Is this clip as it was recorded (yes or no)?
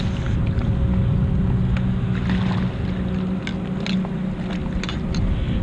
yes